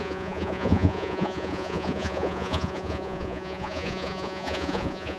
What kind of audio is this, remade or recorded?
remade